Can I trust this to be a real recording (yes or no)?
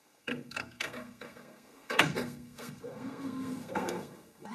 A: no